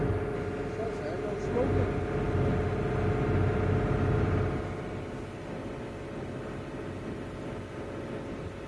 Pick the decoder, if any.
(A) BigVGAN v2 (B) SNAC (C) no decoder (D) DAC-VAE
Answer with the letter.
C